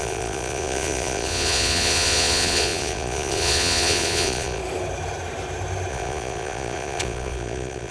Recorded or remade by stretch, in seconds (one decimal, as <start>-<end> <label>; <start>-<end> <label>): 0.0-4.6 remade; 4.6-5.9 recorded; 5.9-7.9 remade